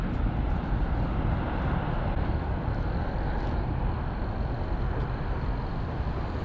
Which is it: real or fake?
real